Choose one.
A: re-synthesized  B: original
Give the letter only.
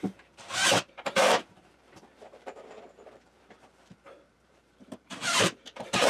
A